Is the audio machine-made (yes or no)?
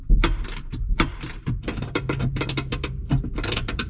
yes